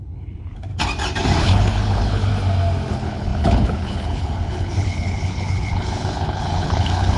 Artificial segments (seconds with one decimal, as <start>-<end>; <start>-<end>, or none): 0.0-0.7; 1.4-2.3; 2.9-7.2